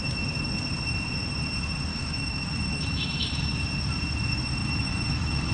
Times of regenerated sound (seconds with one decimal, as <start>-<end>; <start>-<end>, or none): 1.9-3.5; 4.6-5.5